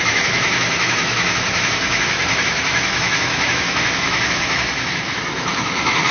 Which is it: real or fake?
fake